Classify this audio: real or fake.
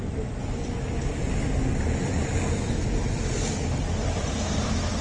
real